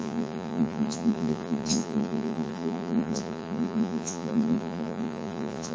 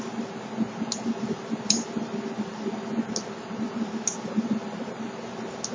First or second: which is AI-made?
first